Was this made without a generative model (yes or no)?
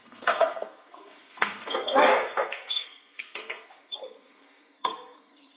no